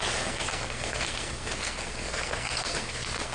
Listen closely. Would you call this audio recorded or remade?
remade